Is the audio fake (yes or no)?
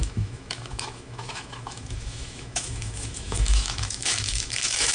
yes